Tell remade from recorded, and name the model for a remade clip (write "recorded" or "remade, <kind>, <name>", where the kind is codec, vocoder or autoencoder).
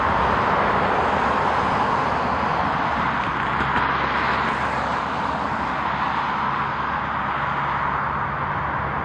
recorded